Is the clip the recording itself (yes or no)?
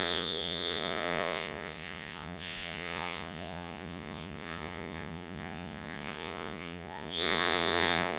no